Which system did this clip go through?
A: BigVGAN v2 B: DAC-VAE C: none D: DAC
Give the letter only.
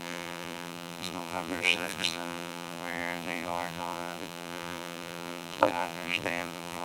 A